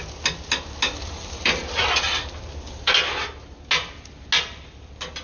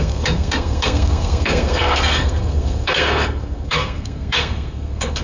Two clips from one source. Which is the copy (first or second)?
second